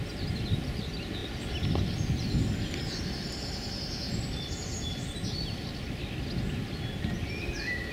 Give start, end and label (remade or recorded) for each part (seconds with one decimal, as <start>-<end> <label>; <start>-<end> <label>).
0.0-7.9 recorded